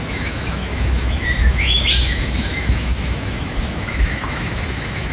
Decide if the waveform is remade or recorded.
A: remade